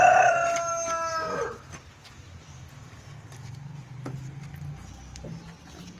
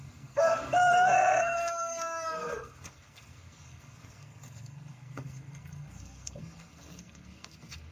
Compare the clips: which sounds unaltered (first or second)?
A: first